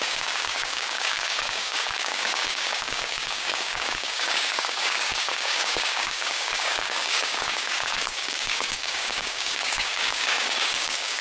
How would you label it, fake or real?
fake